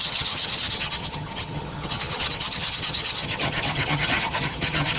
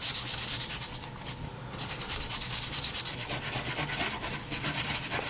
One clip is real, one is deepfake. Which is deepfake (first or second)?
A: first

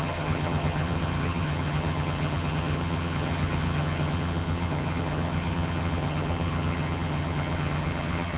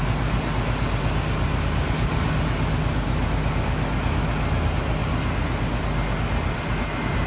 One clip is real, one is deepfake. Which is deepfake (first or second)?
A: first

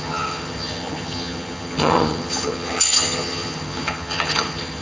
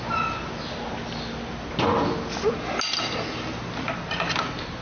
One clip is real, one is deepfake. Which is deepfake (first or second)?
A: first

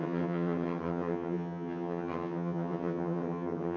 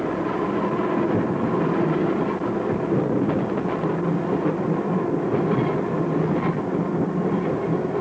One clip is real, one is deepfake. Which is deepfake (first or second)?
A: first